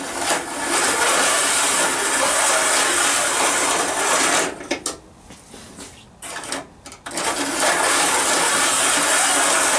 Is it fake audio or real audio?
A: real